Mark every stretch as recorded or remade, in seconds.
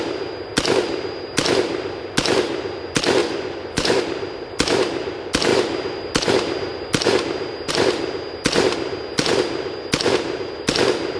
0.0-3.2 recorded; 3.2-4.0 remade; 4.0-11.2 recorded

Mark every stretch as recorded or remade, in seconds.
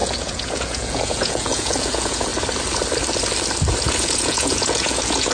0.0-2.3 remade; 2.3-3.8 recorded; 3.8-5.3 remade